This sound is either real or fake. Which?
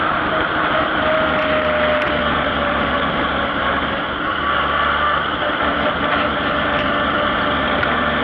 real